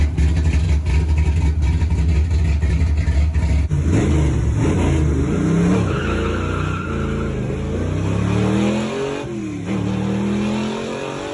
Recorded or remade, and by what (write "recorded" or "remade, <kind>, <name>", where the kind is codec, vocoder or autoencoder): recorded